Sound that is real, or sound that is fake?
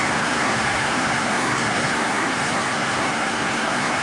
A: fake